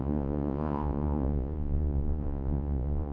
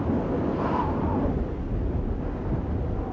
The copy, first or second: first